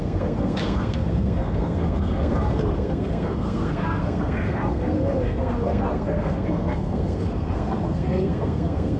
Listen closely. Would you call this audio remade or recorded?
remade